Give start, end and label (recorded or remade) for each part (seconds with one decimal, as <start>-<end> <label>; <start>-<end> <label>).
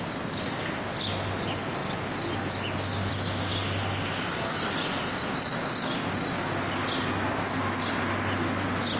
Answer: 0.0-9.0 recorded